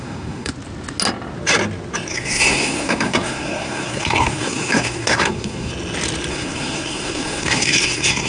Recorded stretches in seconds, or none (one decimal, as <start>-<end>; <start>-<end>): 0.5-2.1; 5.7-6.3